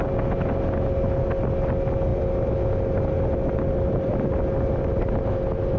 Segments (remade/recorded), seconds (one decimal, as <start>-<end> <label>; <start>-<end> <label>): 0.0-5.8 recorded